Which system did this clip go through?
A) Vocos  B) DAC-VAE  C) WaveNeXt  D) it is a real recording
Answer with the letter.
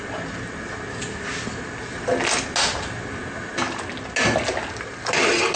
D